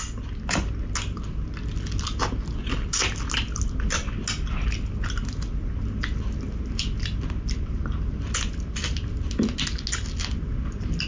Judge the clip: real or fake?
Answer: real